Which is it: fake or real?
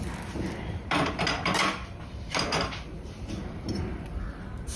fake